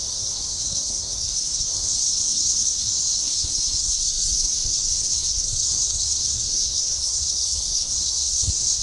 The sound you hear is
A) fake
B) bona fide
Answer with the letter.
A